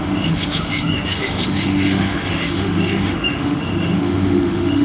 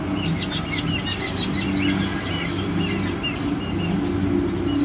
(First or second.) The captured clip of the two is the second